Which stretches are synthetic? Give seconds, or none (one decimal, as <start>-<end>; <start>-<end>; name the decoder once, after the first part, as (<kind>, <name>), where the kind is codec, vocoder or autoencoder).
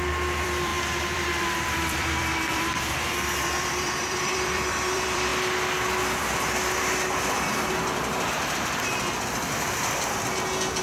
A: 0.0-5.3 (vocoder, BigVGAN v2)